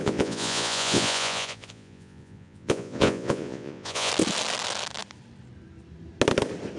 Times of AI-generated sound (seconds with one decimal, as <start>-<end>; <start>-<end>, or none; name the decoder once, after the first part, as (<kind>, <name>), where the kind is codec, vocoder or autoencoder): 0.0-4.1 (vocoder, Vocos)